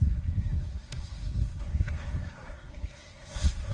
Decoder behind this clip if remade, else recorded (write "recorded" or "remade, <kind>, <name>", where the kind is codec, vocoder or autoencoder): remade, codec, SNAC